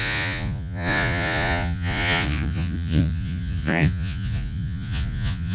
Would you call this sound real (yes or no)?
no